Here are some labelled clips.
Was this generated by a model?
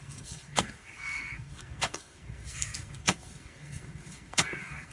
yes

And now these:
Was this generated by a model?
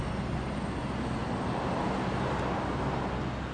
no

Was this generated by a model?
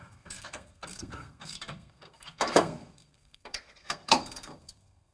yes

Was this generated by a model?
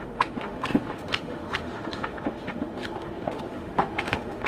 yes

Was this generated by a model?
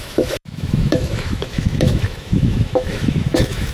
yes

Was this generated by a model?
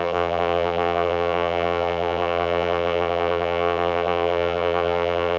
yes